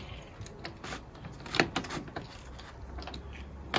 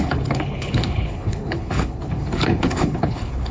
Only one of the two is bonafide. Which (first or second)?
first